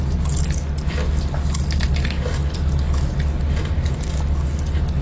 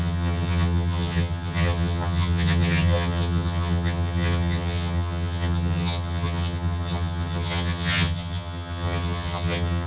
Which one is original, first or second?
first